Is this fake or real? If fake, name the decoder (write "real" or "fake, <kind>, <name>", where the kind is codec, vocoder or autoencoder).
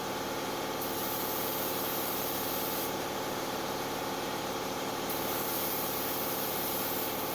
fake, vocoder, BigVGAN v2